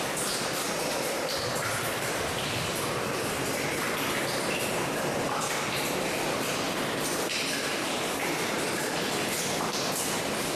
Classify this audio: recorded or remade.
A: remade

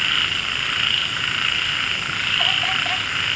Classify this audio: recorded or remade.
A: recorded